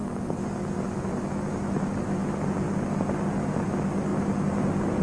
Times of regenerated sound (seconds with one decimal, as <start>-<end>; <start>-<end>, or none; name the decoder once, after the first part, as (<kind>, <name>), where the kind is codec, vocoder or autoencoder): 0.0-1.0 (vocoder, BigVGAN v2)